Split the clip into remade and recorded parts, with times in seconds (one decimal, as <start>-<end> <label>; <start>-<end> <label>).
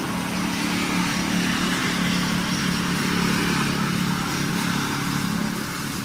0.0-6.0 recorded